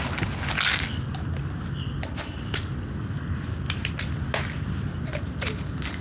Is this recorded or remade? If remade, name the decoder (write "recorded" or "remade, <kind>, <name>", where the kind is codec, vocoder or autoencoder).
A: recorded